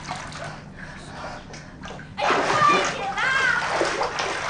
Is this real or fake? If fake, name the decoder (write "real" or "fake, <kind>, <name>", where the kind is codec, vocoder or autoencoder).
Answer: real